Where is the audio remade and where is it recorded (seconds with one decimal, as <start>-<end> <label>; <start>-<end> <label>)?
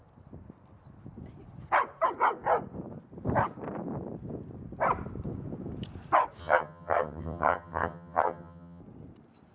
0.0-6.4 recorded; 6.4-8.8 remade; 8.8-9.5 recorded